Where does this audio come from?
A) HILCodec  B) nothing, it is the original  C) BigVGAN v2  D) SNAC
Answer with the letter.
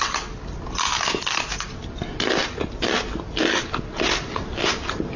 B